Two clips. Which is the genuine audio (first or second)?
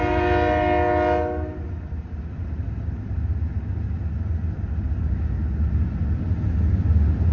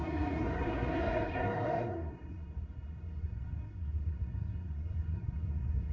first